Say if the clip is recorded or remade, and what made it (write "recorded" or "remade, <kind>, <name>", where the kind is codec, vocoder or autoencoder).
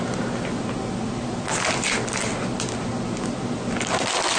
recorded